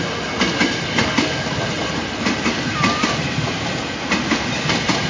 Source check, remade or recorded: recorded